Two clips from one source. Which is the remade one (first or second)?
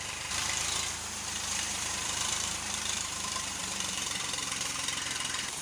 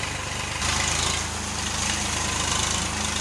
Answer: first